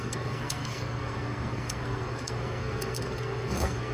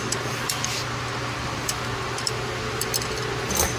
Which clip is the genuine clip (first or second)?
second